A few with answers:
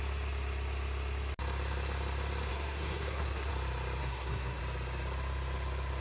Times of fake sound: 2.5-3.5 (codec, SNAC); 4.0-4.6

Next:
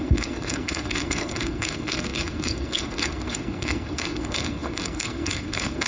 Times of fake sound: 0.0-5.9 (codec, SNAC)

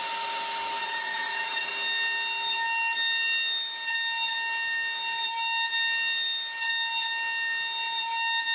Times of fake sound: 0.8-1.7 (vocoder, WaveNeXt)

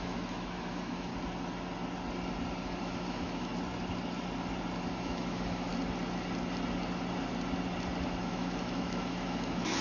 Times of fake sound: 0.0-1.1 (autoencoder, DAC-VAE); 2.8-3.5; 4.9-5.7; 8.2-9.8

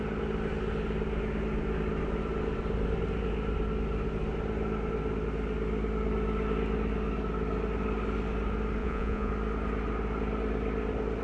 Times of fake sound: 8.8-9.3 (vocoder, Vocos)

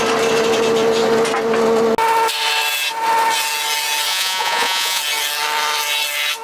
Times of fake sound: 4.1-5.0 (vocoder, Vocos)